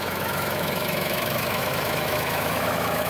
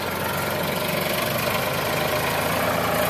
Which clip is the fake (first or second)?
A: first